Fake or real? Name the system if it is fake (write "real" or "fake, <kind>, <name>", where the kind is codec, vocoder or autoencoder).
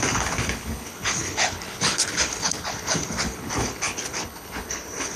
fake, codec, HILCodec